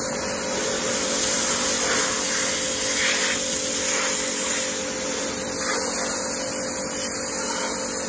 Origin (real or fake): real